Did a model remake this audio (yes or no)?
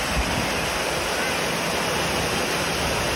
no